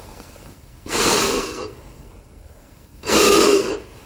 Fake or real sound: fake